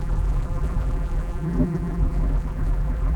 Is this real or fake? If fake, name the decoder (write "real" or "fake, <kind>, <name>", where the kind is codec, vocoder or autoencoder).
fake, vocoder, BigVGAN v2